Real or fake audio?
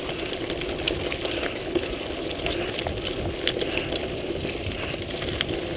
real